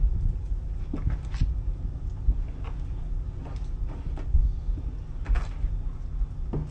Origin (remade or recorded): recorded